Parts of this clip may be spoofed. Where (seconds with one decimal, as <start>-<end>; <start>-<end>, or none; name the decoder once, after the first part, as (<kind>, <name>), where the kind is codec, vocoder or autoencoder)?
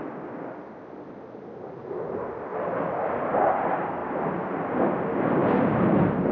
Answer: 2.5-3.4 (vocoder, BigVGAN v2)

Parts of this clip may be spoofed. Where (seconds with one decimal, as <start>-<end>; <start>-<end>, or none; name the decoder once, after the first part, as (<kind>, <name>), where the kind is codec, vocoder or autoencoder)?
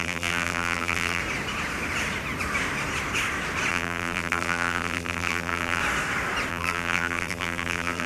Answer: 0.0-1.2 (vocoder, BigVGAN v2); 3.7-5.8; 6.5-8.1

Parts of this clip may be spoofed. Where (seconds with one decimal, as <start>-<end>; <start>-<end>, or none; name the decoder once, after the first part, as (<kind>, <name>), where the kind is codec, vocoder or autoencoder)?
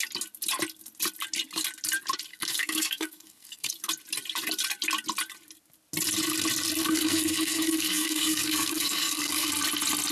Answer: 2.3-3.7 (codec, SNAC); 6.8-9.5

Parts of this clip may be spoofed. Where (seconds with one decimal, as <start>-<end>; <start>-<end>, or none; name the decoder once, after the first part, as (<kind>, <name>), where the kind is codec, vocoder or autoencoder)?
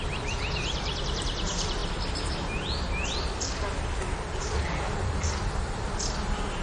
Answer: 0.0-1.8 (vocoder, BigVGAN v2); 4.4-6.6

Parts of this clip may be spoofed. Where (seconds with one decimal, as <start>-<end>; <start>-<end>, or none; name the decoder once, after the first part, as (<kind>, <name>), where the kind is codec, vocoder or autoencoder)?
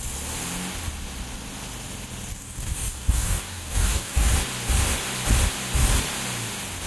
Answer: 2.3-4.3 (codec, DAC)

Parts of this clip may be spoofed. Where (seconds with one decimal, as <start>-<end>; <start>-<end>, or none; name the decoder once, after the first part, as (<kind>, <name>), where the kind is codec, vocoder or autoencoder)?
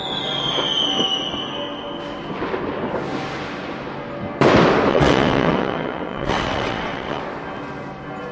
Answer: 4.9-7.2 (vocoder, WaveNeXt)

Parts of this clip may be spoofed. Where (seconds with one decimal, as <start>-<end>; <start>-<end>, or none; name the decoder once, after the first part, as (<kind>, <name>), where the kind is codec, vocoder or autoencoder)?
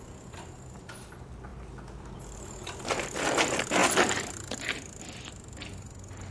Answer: none